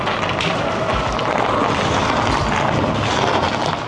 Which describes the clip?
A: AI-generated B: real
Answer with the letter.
B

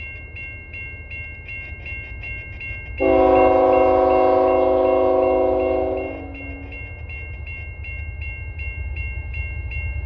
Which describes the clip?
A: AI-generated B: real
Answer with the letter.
B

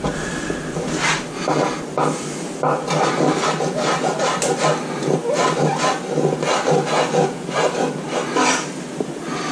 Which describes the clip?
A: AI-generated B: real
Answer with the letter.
B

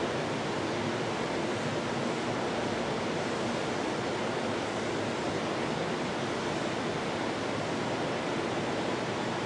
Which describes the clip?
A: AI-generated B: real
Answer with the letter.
B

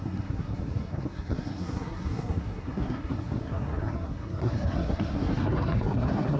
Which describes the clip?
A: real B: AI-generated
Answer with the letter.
B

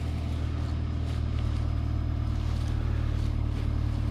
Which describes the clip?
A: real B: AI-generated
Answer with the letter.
A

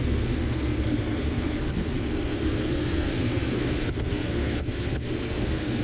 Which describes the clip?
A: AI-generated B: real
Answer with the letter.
A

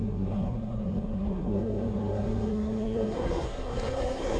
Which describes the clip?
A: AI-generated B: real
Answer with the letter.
A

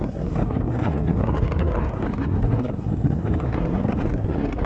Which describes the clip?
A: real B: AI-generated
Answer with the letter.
B